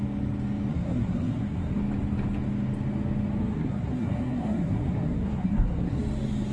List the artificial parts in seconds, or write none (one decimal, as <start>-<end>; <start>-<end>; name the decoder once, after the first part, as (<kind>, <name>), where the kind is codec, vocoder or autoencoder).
0.7-1.8 (codec, SNAC); 3.4-6.0